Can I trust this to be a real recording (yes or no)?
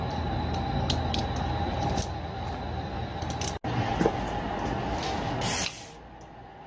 yes